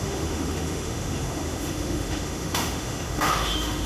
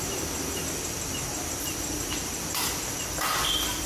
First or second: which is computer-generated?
first